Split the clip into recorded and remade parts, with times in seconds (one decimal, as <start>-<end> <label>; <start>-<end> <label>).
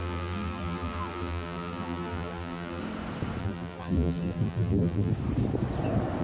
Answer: 0.0-2.8 remade; 2.8-3.4 recorded; 3.4-5.1 remade; 5.1-6.2 recorded